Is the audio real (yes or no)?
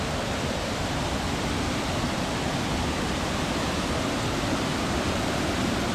yes